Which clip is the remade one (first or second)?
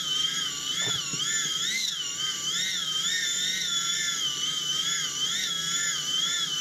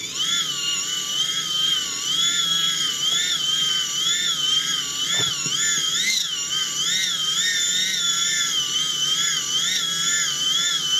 first